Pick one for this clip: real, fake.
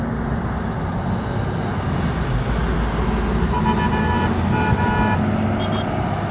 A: real